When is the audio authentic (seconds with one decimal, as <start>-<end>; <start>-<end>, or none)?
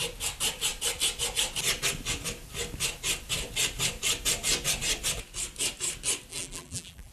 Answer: 0.0-6.3